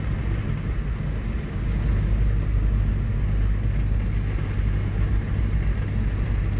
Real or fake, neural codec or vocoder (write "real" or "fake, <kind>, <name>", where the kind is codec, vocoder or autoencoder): real